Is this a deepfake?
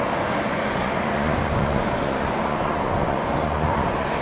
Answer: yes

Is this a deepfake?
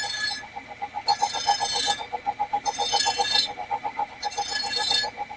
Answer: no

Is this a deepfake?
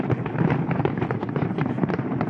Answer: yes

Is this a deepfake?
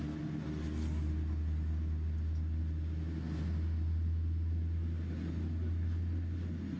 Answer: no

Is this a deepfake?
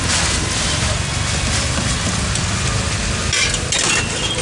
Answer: no